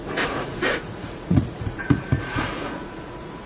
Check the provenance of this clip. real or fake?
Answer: fake